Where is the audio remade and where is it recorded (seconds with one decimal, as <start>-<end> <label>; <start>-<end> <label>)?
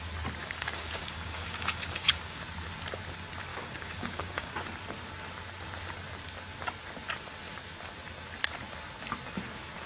0.0-0.4 recorded; 0.4-2.4 remade; 2.4-3.5 recorded; 3.5-4.5 remade; 4.5-9.9 recorded